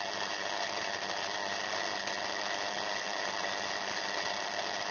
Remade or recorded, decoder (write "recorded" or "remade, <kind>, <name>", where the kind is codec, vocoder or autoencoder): recorded